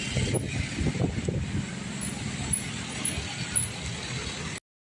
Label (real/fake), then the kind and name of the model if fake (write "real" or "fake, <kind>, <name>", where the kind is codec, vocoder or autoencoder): real